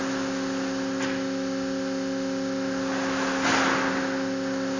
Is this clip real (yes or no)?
yes